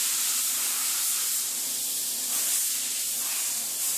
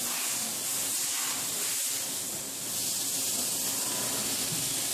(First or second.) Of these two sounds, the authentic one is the second